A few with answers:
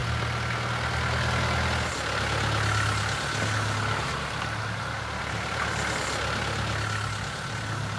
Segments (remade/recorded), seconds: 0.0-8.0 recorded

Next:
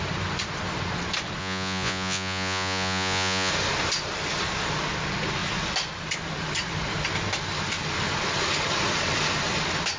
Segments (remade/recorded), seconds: 0.0-1.4 recorded; 1.4-3.5 remade; 3.5-10.0 recorded

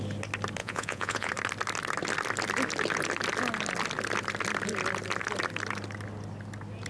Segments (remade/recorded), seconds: 0.0-0.6 recorded; 0.6-1.3 remade; 1.3-6.9 recorded

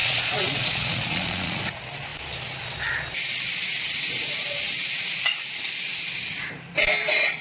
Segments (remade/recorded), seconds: 0.0-1.6 remade; 1.6-7.4 recorded